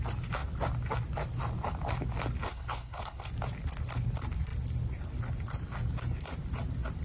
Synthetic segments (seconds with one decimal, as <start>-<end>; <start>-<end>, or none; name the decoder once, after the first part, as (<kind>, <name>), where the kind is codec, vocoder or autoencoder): 2.5-3.3 (codec, HILCodec)